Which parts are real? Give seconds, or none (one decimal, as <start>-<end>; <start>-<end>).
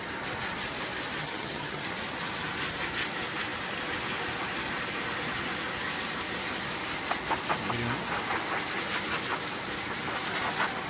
0.0-1.2; 1.9-10.9